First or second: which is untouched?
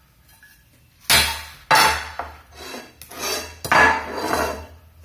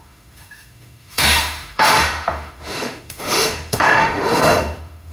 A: first